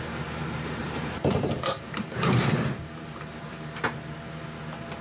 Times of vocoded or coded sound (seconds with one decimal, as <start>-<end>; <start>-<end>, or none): 0.8-3.8